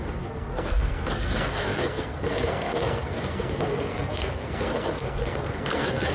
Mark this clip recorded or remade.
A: remade